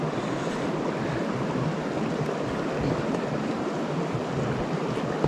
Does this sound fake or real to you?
real